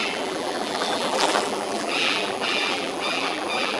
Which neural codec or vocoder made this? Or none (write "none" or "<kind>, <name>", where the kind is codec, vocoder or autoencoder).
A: vocoder, BigVGAN v2